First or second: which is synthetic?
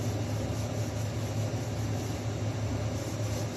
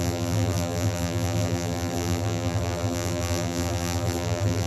second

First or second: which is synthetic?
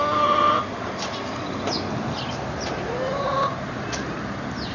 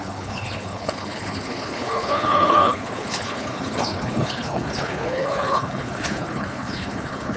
second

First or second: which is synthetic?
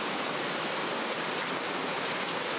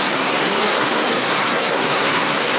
second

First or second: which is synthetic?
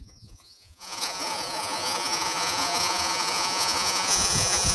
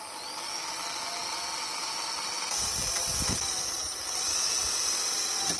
first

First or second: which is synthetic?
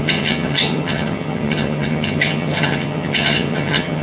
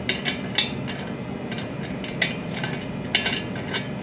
first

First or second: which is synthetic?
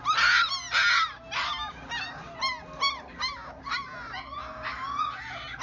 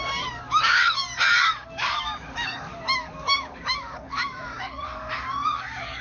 second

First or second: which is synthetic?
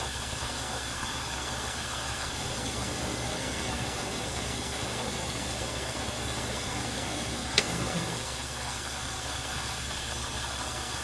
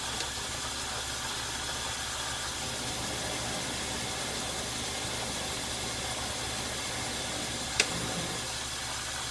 first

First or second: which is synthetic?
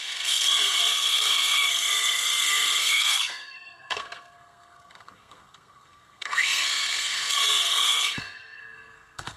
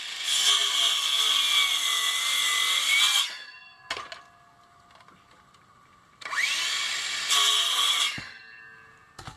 first